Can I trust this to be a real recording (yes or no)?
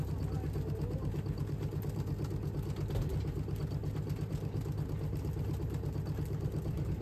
yes